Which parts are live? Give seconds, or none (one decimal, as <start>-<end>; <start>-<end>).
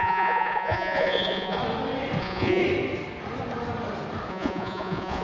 1.6-2.2; 2.6-4.3